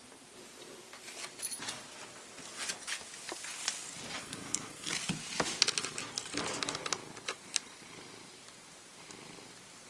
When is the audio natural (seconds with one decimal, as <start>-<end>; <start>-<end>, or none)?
0.0-4.2; 4.9-9.9